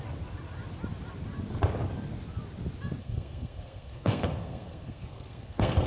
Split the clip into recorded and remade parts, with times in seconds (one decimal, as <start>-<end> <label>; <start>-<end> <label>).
0.0-3.0 recorded; 3.0-5.9 remade